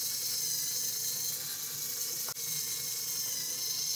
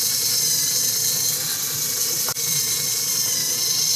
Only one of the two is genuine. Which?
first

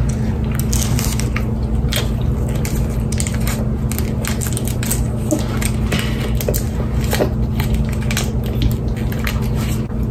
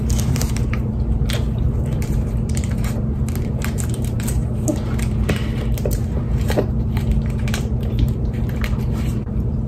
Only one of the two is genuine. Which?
first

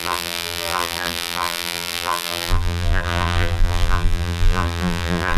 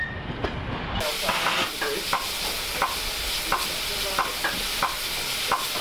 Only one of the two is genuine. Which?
second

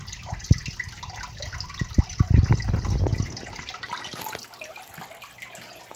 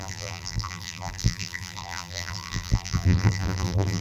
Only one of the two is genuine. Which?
first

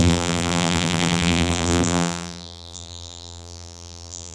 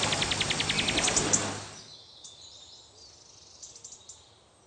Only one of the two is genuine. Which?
second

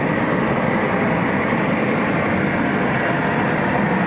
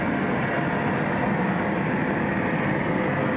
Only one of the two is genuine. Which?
second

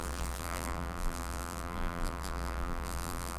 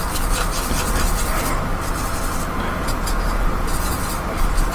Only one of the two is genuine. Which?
second